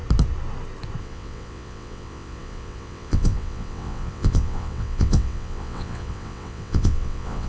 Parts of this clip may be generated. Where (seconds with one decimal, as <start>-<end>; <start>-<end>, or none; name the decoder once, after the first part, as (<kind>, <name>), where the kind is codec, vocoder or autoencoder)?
1.0-7.5 (vocoder, WaveNeXt)